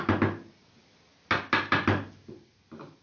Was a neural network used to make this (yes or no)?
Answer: no